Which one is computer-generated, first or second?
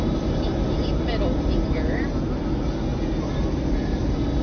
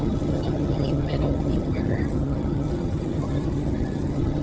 second